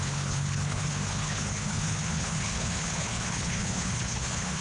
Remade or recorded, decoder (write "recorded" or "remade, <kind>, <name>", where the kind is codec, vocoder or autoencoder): remade, codec, HILCodec